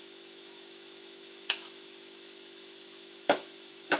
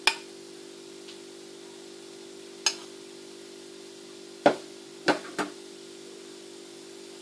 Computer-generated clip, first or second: first